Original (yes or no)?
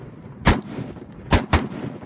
no